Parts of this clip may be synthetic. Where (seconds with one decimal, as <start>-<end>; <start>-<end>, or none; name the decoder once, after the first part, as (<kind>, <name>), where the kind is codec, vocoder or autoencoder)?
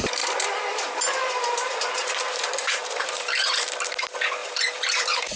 0.7-3.9 (vocoder, BigVGAN v2); 4.4-5.4